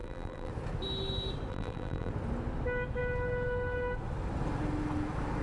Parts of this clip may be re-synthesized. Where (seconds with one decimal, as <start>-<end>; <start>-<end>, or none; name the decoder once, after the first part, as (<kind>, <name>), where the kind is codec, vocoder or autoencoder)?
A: 0.0-0.5 (vocoder, BigVGAN v2); 1.5-2.1